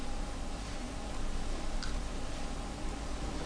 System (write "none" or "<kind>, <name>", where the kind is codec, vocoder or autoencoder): vocoder, BigVGAN v2